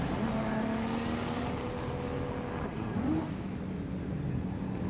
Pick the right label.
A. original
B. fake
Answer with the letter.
A